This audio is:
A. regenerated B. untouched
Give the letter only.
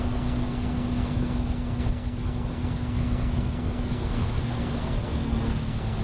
A